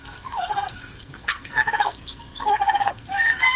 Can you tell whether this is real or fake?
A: fake